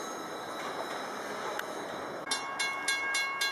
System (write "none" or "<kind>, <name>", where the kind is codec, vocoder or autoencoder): none